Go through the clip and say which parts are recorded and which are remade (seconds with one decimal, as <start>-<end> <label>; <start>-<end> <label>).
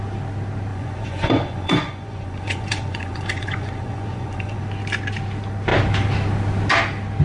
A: 0.0-0.7 recorded; 0.7-4.6 remade; 4.6-7.2 recorded